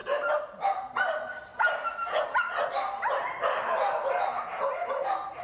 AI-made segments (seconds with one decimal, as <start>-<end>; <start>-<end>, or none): none